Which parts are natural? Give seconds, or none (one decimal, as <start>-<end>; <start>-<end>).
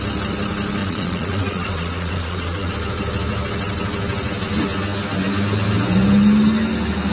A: 0.0-0.8; 2.7-7.1